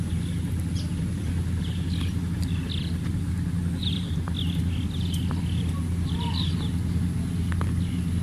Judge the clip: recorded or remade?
remade